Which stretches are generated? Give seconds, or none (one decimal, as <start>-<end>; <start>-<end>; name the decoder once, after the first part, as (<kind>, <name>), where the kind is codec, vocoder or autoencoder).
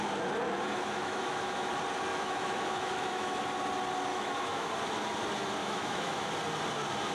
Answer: 0.7-1.7 (autoencoder, DAC-VAE); 2.1-3.4; 4.1-4.7; 5.6-6.3